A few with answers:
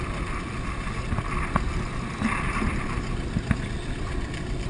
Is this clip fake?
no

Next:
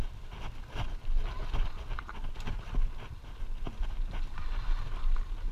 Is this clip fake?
no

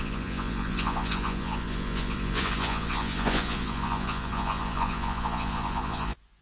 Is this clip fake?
yes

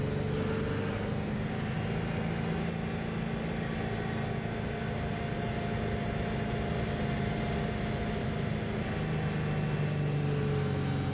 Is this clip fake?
no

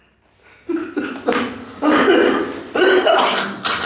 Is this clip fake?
no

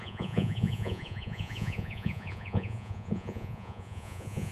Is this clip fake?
yes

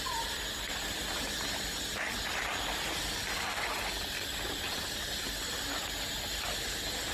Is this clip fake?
no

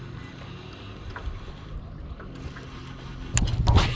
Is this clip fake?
no